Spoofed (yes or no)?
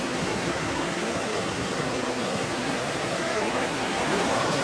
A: yes